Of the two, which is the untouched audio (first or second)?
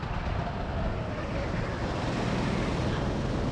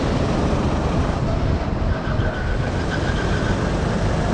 first